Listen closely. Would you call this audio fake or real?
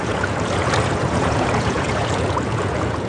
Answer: fake